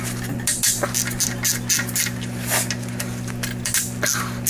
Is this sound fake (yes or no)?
no